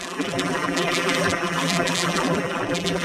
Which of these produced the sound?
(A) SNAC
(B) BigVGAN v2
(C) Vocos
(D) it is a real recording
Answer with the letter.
B